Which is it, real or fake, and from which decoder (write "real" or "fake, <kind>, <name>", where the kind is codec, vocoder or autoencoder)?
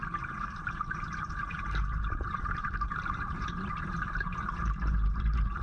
fake, vocoder, BigVGAN v2